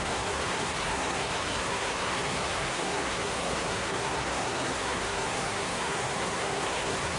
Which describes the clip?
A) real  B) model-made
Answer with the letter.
B